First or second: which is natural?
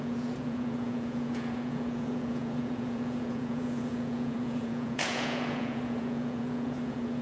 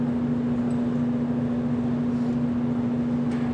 second